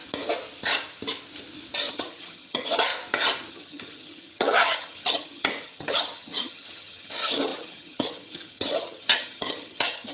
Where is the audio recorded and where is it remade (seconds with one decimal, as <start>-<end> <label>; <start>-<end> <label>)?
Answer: 0.0-1.9 recorded; 1.9-2.9 remade; 2.9-3.5 recorded; 3.5-10.1 remade